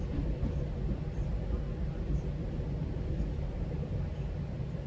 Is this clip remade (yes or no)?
no